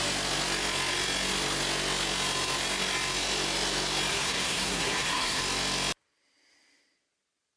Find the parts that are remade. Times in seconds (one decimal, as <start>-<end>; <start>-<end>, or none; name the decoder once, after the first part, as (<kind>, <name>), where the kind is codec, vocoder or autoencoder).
4.1-5.4 (codec, SNAC)